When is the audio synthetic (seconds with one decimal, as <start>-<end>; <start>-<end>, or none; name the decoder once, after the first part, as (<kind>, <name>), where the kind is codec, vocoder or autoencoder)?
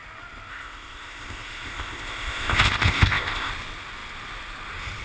0.5-3.5 (codec, ZipCodec)